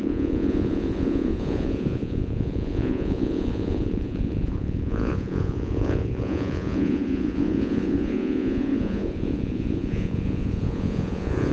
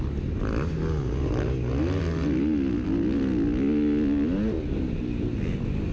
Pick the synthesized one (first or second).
first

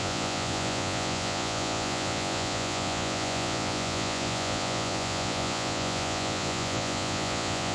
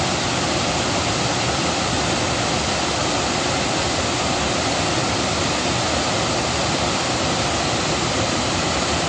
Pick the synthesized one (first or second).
first